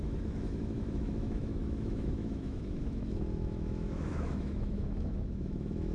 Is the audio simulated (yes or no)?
yes